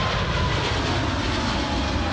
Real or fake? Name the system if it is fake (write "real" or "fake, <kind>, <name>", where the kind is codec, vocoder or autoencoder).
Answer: real